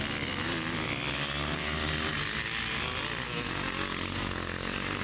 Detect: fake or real real